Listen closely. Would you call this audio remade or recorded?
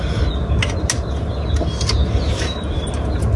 recorded